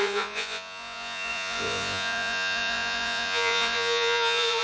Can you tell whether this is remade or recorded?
remade